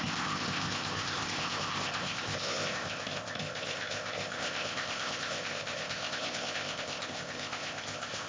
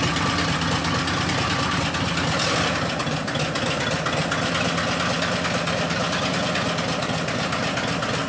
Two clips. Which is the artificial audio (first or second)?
first